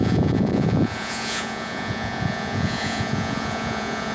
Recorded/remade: remade